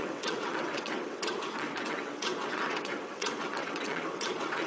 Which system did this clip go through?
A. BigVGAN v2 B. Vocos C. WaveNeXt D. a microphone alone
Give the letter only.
C